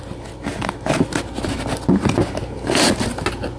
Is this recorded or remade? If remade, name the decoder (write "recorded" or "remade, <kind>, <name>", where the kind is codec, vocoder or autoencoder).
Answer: recorded